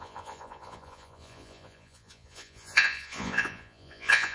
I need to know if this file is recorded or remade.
remade